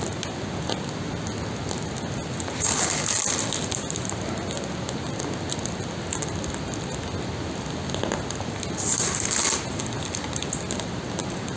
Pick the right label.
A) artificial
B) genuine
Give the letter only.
B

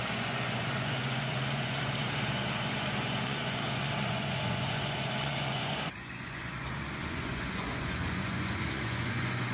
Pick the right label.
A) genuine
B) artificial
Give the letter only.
B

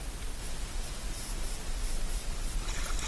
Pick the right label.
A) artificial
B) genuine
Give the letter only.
B